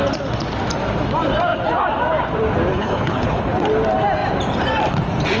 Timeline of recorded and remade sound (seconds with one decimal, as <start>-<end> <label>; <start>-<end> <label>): 0.0-2.7 recorded; 2.7-3.4 remade; 3.4-5.4 recorded